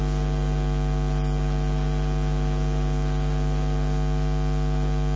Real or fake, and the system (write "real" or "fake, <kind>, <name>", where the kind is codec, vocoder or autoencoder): real